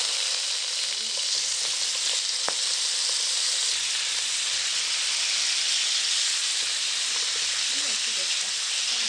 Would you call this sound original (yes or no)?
yes